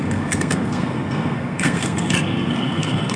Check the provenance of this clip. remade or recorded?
remade